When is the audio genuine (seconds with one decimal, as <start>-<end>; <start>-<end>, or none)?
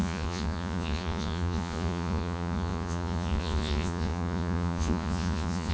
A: none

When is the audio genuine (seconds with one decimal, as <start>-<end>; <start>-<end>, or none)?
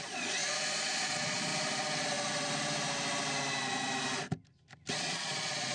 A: 0.4-0.9; 1.5-4.9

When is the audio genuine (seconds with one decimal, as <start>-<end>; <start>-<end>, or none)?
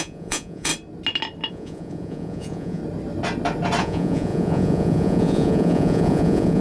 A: 0.7-1.5; 2.8-3.8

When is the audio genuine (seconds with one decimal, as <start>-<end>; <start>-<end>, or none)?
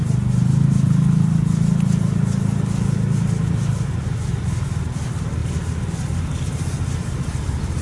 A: 0.0-7.8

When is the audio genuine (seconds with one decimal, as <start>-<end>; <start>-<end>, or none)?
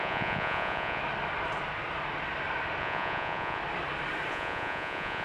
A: 1.0-2.8; 3.6-4.3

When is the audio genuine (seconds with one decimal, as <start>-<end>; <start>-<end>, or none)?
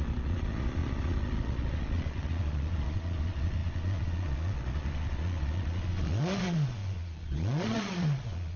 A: none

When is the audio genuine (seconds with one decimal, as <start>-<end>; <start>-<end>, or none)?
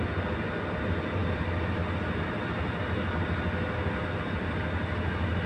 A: 0.0-5.5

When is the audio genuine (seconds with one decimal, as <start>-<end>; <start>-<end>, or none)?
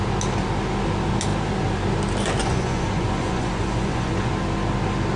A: 0.0-2.4; 4.3-5.2